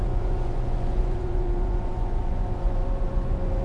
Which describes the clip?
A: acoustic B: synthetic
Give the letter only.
B